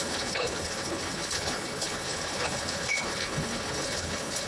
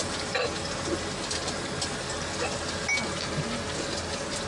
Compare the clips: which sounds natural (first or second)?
second